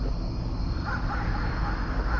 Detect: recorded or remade recorded